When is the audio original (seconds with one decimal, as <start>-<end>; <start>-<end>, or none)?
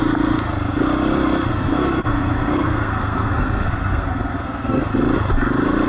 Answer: 0.0-1.5; 4.9-5.9